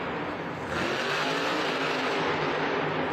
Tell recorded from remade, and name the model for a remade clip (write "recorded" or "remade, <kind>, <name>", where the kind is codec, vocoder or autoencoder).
recorded